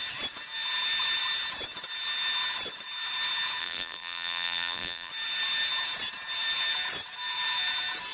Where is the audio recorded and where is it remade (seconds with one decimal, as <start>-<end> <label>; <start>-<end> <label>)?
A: 0.0-3.6 recorded; 3.6-5.1 remade; 5.1-8.1 recorded

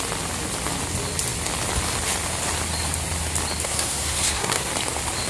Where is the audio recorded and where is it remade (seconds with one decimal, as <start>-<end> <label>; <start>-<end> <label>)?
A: 0.0-3.6 recorded; 3.6-4.7 remade; 4.7-5.3 recorded